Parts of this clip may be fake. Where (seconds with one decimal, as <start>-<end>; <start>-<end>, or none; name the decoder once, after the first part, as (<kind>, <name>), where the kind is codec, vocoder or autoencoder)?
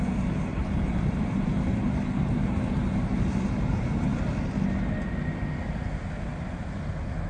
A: 0.5-4.1 (vocoder, BigVGAN v2)